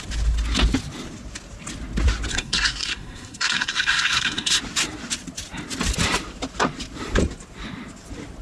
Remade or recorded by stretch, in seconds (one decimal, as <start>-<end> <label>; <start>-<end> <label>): 0.0-2.3 recorded; 2.3-4.6 remade; 4.6-8.4 recorded